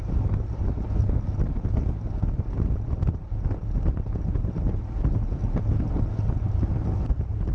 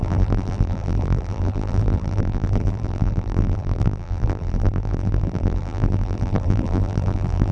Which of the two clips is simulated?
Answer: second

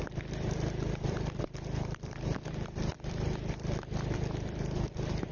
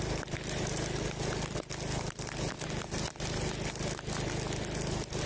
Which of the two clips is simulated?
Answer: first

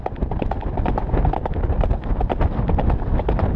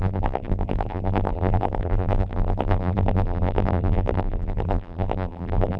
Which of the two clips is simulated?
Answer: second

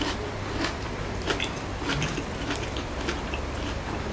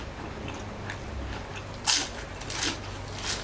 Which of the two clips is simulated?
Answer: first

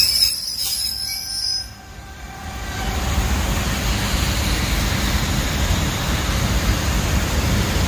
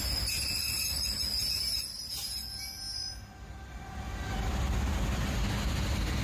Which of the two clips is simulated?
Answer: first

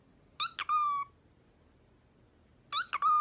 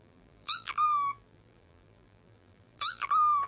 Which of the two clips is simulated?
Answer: second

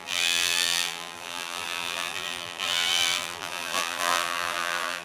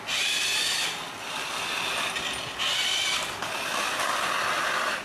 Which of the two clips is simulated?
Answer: first